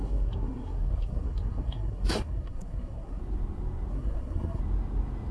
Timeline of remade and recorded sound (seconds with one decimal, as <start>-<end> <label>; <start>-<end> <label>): 0.0-3.2 remade; 3.2-3.9 recorded; 3.9-4.6 remade; 4.6-5.3 recorded

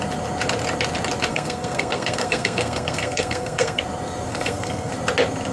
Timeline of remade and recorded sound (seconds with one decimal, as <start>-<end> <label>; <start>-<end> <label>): 0.0-1.3 recorded; 1.3-3.8 remade; 3.8-4.3 recorded; 4.3-4.9 remade; 4.9-5.5 recorded

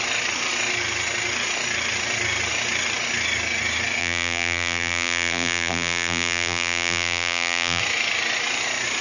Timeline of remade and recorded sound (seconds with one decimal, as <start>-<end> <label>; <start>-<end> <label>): 0.0-4.0 recorded; 4.0-7.8 remade; 7.8-9.0 recorded

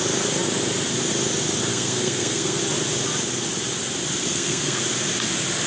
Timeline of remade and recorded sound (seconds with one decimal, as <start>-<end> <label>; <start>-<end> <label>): 0.0-1.7 recorded; 1.7-2.6 remade; 2.6-4.2 recorded; 4.2-4.8 remade; 4.8-5.7 recorded